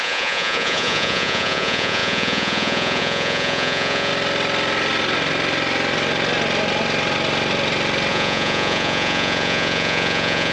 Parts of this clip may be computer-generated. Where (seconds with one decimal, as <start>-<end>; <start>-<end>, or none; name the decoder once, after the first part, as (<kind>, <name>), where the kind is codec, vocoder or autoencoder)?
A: 0.0-4.1 (vocoder, Vocos); 8.1-10.5